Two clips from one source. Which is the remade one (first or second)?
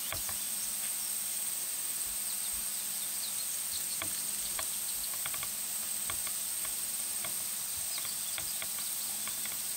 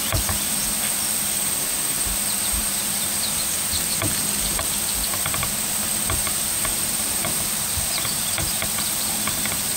second